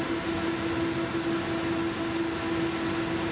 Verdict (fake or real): real